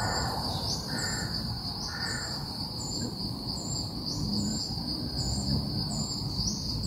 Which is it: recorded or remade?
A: remade